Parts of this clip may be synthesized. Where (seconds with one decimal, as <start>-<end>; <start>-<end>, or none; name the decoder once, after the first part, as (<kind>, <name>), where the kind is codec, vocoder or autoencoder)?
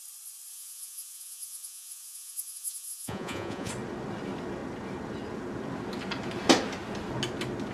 0.5-3.7 (vocoder, Vocos)